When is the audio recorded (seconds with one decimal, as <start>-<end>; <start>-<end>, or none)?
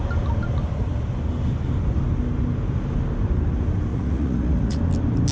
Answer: 0.0-3.9; 4.8-5.3